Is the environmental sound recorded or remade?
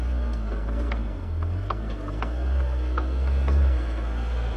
remade